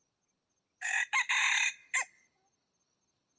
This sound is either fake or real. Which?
real